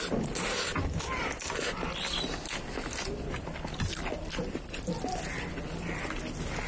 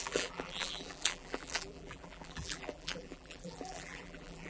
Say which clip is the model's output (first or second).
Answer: second